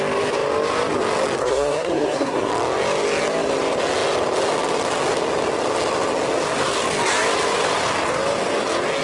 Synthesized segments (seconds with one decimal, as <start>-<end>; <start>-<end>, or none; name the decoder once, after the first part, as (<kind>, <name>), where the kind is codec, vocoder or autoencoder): 1.4-2.5 (codec, SNAC)